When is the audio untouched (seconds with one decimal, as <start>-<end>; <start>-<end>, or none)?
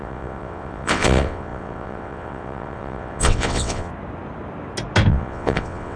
3.9-5.1